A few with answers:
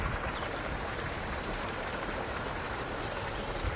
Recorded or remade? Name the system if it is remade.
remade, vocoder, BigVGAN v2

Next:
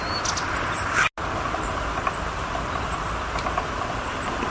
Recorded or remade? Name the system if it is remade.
recorded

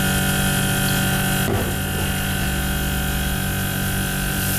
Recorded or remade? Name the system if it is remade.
recorded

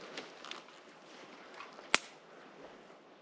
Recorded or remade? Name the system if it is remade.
recorded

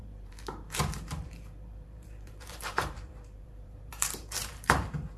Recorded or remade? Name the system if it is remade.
remade, vocoder, BigVGAN v2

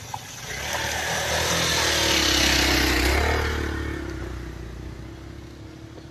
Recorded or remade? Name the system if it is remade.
recorded